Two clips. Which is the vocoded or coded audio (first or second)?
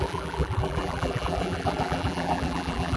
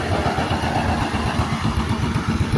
first